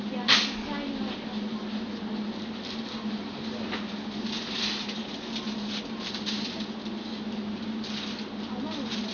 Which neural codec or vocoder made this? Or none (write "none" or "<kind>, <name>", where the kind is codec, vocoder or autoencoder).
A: none